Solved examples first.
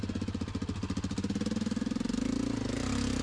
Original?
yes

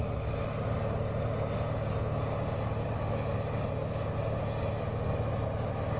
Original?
yes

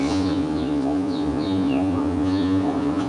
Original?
no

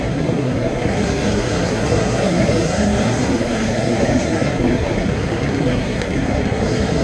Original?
no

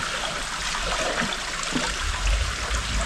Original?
yes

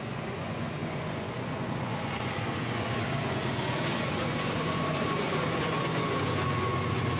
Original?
no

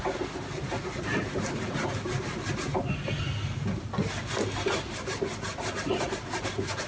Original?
yes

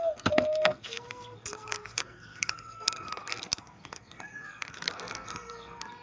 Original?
no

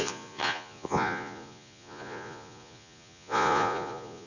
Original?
no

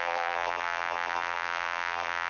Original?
no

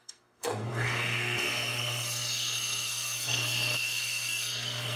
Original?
no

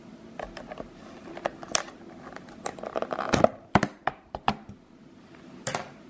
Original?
yes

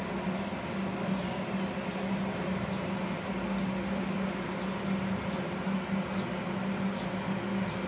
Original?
yes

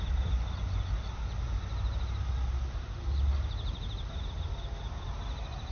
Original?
yes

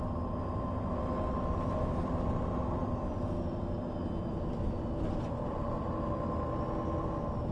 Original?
yes